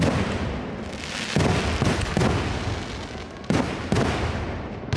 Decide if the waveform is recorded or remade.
recorded